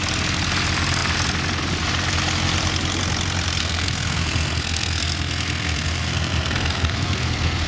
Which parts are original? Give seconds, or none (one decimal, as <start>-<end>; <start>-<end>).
0.0-3.6